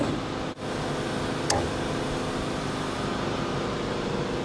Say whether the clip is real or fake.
real